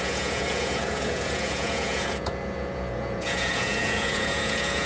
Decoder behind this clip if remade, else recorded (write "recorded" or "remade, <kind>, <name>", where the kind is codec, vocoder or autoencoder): remade, vocoder, Vocos